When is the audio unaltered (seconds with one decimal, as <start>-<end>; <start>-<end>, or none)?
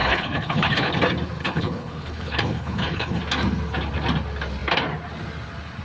0.9-1.4; 3.2-5.8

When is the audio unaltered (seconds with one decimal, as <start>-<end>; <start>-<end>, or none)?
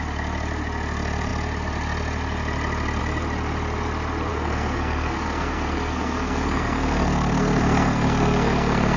0.0-4.3